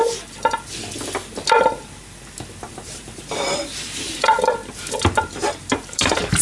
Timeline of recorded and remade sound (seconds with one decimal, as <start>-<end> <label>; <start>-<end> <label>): 0.0-2.7 recorded; 2.7-4.6 remade; 4.6-5.6 recorded; 5.6-6.4 remade